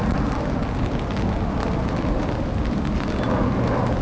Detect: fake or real real